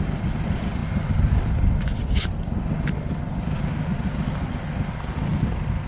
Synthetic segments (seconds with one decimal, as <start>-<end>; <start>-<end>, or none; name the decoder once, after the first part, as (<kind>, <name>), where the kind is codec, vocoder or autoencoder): none